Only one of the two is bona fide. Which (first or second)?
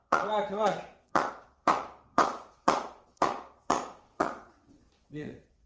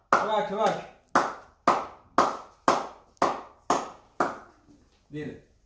second